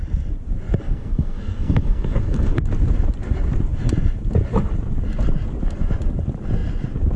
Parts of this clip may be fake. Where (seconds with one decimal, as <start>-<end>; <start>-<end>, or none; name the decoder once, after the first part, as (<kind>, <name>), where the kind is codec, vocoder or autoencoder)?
0.8-2.6 (codec, SNAC)